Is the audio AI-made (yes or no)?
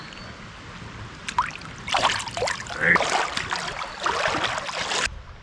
no